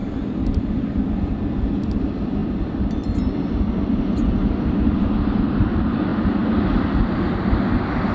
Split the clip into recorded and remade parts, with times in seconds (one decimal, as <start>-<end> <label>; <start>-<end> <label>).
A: 0.0-1.5 remade; 1.5-2.4 recorded; 2.4-3.5 remade; 3.5-8.1 recorded